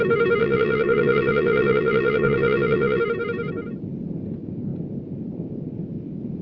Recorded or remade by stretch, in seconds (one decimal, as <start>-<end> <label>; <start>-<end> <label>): 0.0-0.4 recorded; 0.4-3.0 remade; 3.0-6.4 recorded